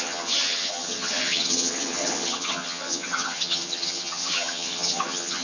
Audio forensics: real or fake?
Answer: fake